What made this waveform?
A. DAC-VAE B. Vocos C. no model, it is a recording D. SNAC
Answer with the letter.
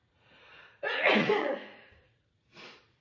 B